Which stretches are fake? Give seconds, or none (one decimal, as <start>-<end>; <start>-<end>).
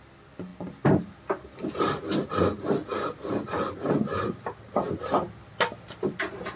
none